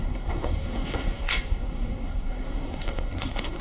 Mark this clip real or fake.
fake